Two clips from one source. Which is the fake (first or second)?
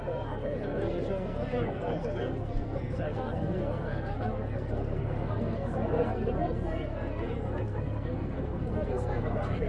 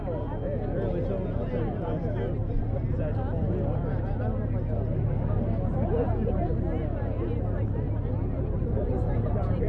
first